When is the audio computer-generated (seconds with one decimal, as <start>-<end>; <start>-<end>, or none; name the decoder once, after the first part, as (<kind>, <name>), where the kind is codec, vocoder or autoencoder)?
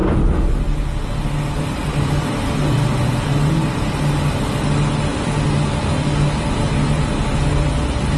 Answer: 1.8-2.3 (vocoder, BigVGAN v2); 5.1-7.1